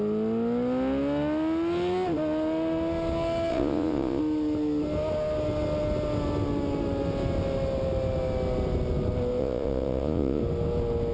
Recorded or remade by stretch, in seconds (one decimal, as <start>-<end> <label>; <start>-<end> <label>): 0.0-3.5 recorded; 3.5-4.2 remade; 4.2-9.4 recorded; 9.4-10.4 remade; 10.4-11.1 recorded